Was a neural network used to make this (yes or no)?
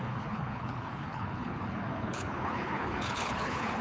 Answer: yes